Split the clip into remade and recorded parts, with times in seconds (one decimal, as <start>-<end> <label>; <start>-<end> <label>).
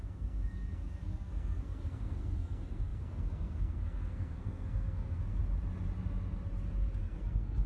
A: 0.0-5.4 remade; 5.4-7.0 recorded; 7.0-7.7 remade